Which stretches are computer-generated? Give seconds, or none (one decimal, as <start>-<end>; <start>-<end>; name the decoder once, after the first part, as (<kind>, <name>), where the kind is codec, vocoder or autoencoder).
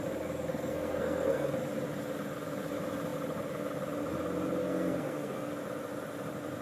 0.5-1.5 (codec, SNAC); 4.6-5.5